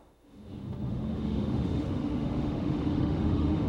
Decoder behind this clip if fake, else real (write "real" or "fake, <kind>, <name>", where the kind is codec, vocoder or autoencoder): fake, autoencoder, DAC-VAE